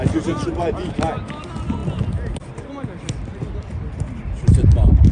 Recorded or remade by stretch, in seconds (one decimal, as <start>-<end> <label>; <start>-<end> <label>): 0.0-5.1 recorded